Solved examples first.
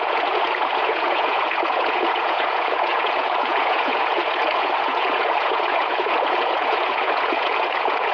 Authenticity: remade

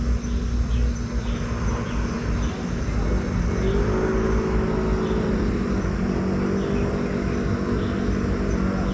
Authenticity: recorded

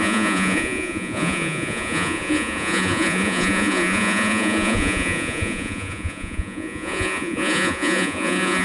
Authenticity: remade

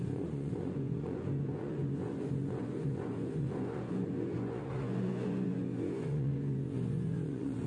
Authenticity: remade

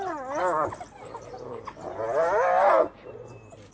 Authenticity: recorded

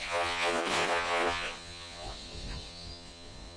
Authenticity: remade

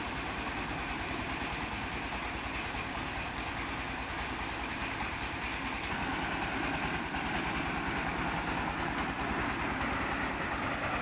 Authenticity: recorded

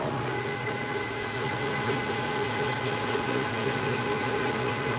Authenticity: remade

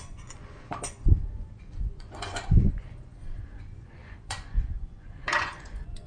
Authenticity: remade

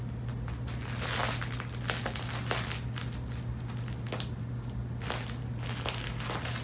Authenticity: recorded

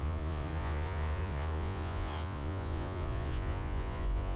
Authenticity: remade